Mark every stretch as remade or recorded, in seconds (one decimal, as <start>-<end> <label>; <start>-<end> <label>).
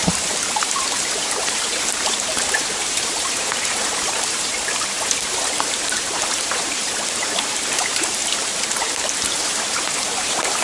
0.0-0.6 recorded; 0.6-8.2 remade; 8.2-9.1 recorded; 9.1-10.6 remade